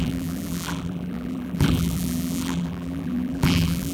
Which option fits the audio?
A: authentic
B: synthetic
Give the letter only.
B